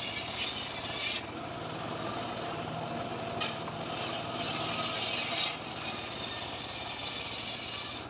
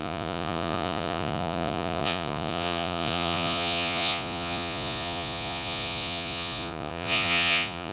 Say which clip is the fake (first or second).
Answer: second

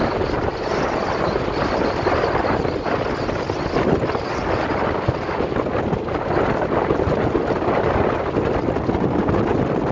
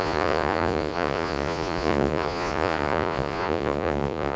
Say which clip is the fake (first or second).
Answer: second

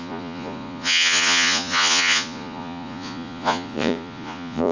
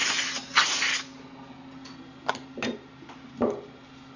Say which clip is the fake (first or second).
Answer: first